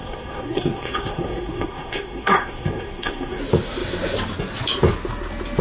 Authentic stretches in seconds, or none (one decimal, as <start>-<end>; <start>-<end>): 3.4-5.6